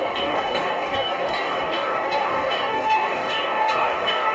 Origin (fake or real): fake